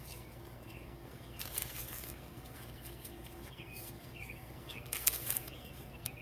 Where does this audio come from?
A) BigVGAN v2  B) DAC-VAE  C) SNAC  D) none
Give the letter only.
C